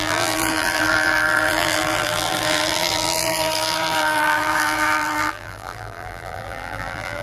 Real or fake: fake